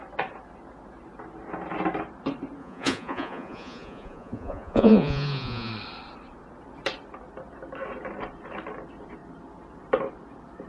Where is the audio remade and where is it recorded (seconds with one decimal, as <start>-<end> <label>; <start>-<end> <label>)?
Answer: 0.0-2.6 recorded; 2.6-5.7 remade; 5.7-10.7 recorded